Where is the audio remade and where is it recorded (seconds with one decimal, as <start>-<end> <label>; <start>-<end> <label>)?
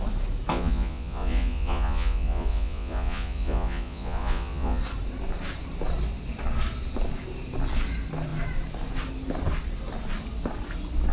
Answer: 0.0-0.5 recorded; 0.5-4.8 remade; 4.8-11.1 recorded